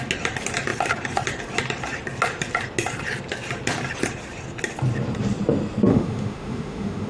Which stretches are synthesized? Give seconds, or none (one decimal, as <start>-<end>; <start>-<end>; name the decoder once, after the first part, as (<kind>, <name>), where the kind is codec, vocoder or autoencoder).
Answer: 5.9-7.1 (autoencoder, DAC-VAE)